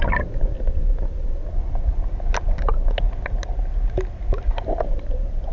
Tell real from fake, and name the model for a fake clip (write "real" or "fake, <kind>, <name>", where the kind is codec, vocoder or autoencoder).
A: real